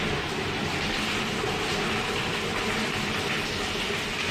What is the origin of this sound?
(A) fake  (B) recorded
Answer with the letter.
B